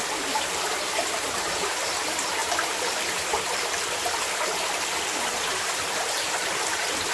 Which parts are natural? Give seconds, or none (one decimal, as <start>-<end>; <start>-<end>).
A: 0.0-7.1